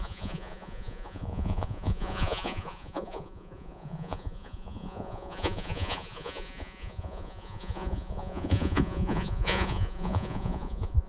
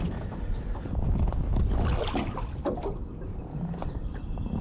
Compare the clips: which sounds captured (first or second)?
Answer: second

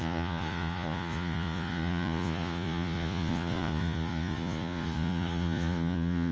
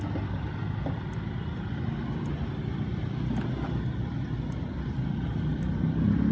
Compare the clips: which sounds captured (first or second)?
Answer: second